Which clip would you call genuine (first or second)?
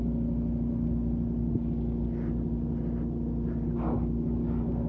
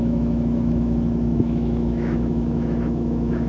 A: first